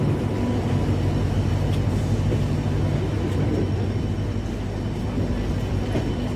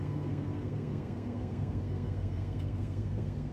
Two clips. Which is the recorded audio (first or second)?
first